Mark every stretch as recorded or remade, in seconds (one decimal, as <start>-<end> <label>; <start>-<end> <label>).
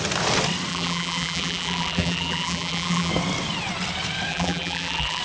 0.0-0.7 recorded; 0.7-3.1 remade; 3.1-4.3 recorded; 4.3-5.2 remade